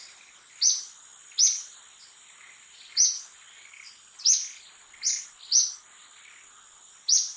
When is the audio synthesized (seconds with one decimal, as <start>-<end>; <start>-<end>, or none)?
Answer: none